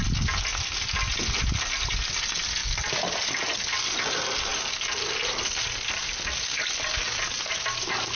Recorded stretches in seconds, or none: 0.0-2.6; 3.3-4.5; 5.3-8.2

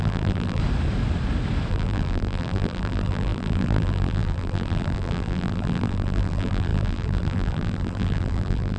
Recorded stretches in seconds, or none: 0.6-1.7

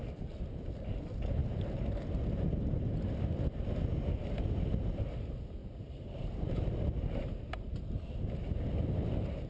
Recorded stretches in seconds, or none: 0.0-5.6; 8.0-9.5

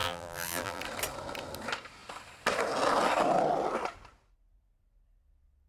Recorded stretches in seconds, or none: 0.8-5.7

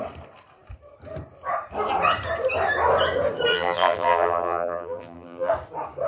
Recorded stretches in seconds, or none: 0.0-3.5; 5.5-6.1

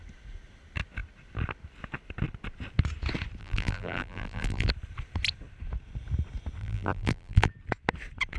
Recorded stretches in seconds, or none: 0.0-3.4; 4.7-6.6; 7.5-8.4

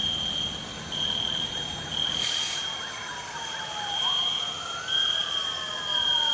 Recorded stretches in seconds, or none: 0.0-6.3